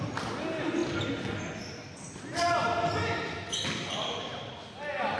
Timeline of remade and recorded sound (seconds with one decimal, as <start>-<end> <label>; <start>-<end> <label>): 0.0-5.2 recorded